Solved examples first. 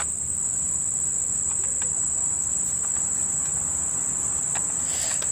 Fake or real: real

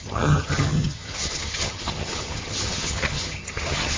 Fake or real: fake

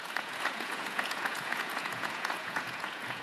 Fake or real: fake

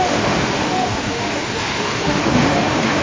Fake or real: fake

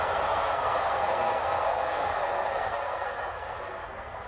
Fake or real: fake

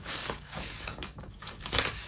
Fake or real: fake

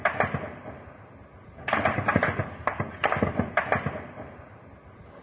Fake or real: real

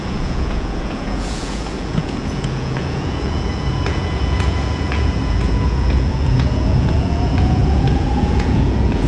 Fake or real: fake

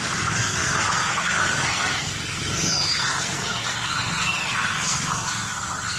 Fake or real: fake